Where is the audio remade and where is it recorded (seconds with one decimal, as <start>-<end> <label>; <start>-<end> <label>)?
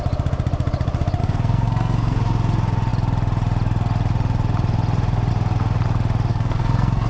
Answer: 0.0-1.2 recorded; 1.2-2.2 remade; 2.2-6.3 recorded; 6.3-7.1 remade